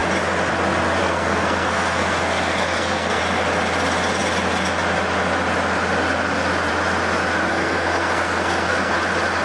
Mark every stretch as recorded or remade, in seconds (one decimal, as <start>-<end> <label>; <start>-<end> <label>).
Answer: 0.0-1.0 recorded; 1.0-3.2 remade; 3.2-7.5 recorded; 7.5-8.9 remade; 8.9-9.4 recorded